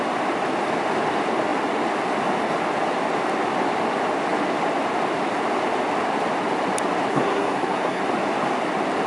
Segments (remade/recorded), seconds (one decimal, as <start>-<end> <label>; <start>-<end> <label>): 0.0-7.1 recorded; 7.1-8.0 remade; 8.0-9.1 recorded